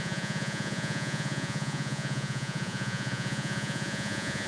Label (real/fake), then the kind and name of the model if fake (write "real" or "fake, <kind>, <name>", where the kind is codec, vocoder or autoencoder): fake, vocoder, Vocos